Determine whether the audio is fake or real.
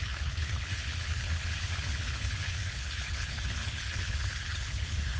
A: fake